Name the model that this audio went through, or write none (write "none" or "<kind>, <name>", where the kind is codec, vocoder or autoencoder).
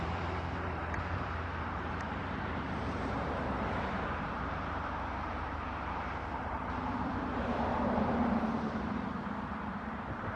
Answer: vocoder, BigVGAN v2